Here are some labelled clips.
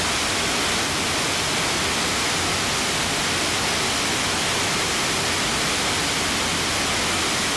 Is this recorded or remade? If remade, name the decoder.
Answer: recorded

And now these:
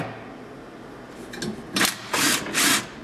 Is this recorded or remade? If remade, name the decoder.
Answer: recorded